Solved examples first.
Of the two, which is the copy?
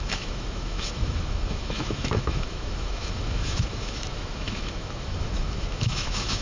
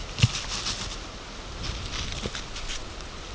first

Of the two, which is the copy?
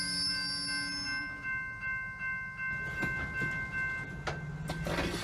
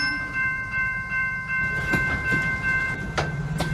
second